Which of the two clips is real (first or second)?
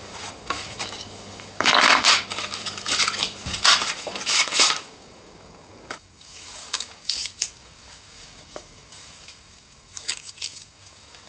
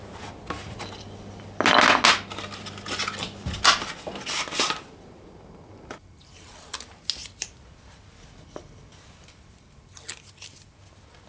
second